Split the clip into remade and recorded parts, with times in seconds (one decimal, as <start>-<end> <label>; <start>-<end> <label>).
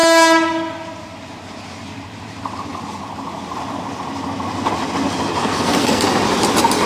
0.0-5.4 recorded; 5.4-6.0 remade; 6.0-6.9 recorded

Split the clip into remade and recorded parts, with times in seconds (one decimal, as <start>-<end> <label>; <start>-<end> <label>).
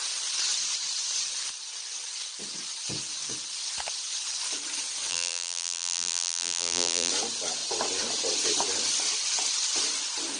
0.0-5.1 recorded; 5.1-7.1 remade; 7.1-10.4 recorded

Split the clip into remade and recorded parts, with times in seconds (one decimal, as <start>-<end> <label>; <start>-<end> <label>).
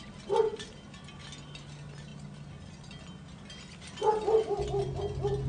0.0-5.5 recorded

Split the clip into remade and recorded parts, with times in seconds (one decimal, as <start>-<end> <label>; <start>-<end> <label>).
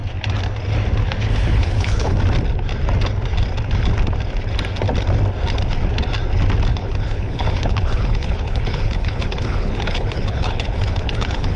0.0-1.5 recorded; 1.5-2.2 remade; 2.2-6.7 recorded; 6.7-11.6 remade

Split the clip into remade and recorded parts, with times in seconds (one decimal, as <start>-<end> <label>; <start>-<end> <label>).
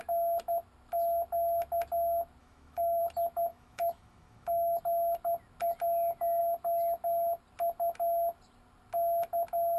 0.0-2.4 recorded; 2.4-3.0 remade; 3.0-3.5 recorded; 3.5-4.8 remade; 4.8-9.8 recorded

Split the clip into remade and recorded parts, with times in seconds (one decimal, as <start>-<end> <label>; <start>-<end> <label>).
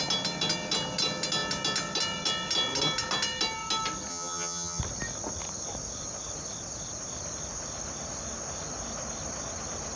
0.0-4.1 recorded; 4.1-4.8 remade; 4.8-10.0 recorded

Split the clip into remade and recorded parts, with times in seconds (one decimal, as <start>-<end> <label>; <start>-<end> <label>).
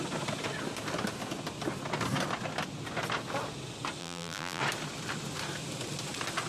0.0-4.0 recorded; 4.0-4.6 remade; 4.6-6.5 recorded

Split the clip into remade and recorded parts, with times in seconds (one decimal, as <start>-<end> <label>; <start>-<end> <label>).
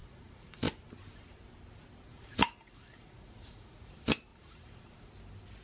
0.0-0.6 remade; 0.6-2.1 recorded; 2.1-3.9 remade; 3.9-4.3 recorded; 4.3-5.1 remade; 5.1-5.6 recorded